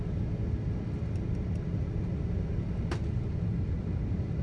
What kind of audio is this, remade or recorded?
recorded